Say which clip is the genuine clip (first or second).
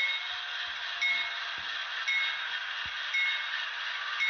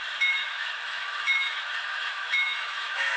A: first